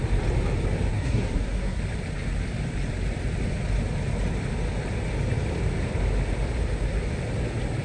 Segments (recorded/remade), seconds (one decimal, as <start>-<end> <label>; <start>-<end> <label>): 0.0-0.9 recorded; 0.9-1.8 remade; 1.8-7.8 recorded